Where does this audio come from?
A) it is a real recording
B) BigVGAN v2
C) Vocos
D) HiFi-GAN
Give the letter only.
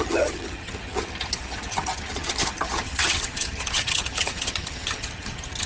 D